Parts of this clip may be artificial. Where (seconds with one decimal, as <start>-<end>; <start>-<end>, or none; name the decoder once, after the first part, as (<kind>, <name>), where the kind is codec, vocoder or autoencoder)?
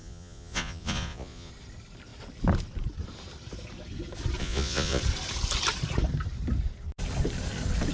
0.0-1.5 (vocoder, Vocos); 4.4-5.0